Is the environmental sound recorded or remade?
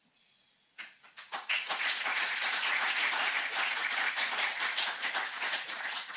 remade